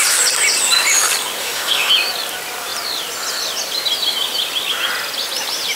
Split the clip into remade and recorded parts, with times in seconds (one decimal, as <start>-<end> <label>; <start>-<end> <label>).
0.0-1.4 recorded; 1.4-1.9 remade; 1.9-5.8 recorded